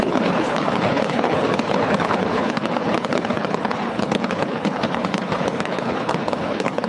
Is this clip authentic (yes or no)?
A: no